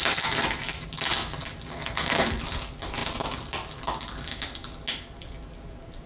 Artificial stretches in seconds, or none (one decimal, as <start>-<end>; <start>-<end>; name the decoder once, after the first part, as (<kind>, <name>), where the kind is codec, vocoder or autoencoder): 1.7-2.4 (codec, SNAC)